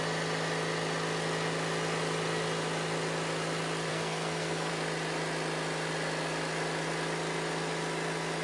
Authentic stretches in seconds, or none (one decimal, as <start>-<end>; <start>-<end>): 0.0-3.9; 4.7-8.4